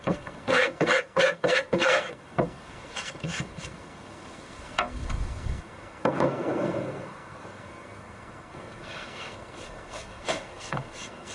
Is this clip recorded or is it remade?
remade